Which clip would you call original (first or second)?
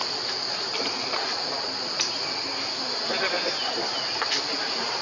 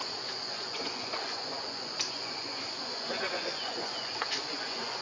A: first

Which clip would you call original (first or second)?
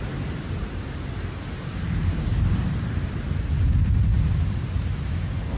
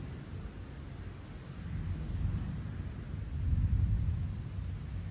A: second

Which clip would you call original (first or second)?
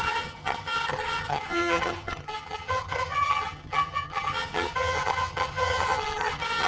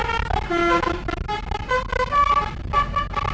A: second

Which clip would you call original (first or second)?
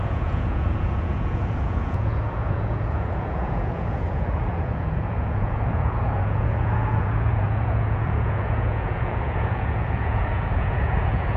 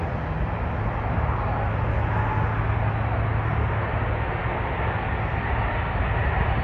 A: second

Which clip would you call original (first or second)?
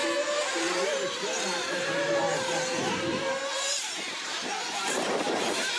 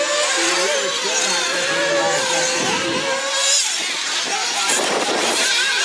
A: second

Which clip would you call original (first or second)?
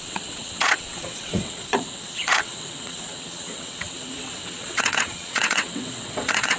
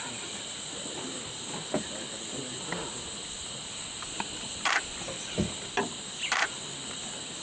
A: second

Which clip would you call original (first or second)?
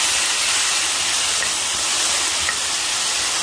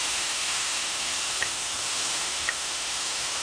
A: first